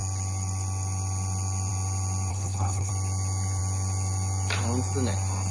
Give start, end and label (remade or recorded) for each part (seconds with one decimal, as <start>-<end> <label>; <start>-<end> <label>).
0.0-2.3 recorded; 2.3-2.9 remade; 2.9-5.5 recorded